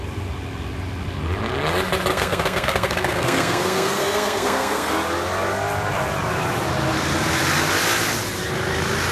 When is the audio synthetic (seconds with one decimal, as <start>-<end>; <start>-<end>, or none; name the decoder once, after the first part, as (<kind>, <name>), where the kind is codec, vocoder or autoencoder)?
2.1-4.9 (codec, SNAC)